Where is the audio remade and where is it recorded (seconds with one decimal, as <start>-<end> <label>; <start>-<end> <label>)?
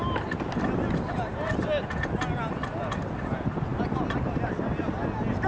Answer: 0.0-5.5 recorded